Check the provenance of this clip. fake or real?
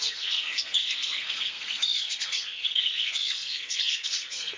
fake